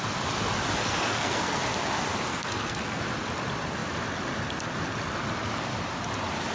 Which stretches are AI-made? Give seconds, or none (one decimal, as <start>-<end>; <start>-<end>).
0.8-1.6; 2.3-3.0